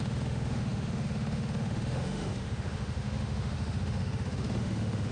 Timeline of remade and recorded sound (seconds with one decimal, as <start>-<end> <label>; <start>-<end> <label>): 0.0-5.1 remade